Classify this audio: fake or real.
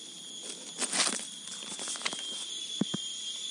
real